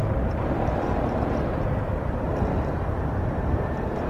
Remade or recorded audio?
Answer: remade